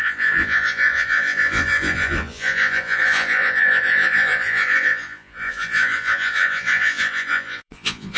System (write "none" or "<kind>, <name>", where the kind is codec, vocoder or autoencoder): vocoder, Vocos